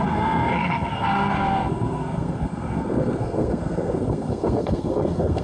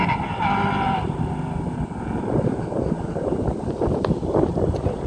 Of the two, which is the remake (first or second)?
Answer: first